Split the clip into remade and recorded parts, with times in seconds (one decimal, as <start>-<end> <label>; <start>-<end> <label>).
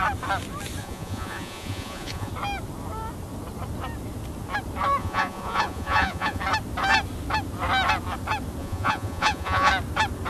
0.0-0.8 recorded; 0.8-2.3 remade; 2.3-5.0 recorded; 5.0-6.4 remade; 6.4-8.6 recorded; 8.6-9.7 remade; 9.7-10.3 recorded